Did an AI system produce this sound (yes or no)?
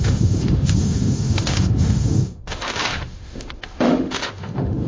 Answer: yes